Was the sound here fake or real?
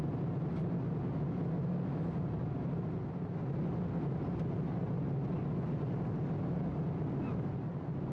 real